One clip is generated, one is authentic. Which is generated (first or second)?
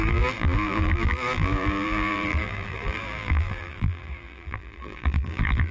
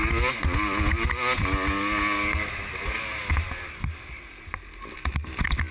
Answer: first